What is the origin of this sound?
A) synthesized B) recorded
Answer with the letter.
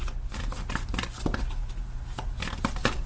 B